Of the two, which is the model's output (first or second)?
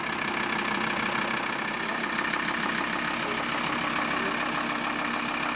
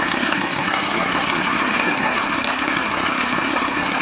second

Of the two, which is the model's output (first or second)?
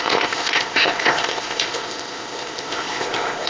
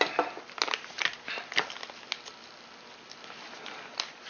first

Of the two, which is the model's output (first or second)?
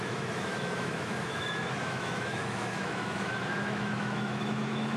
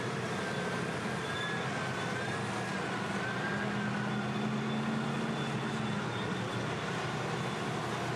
first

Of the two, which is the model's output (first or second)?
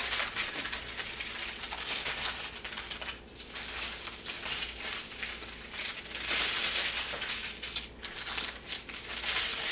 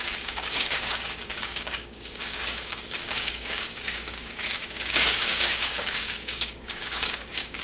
second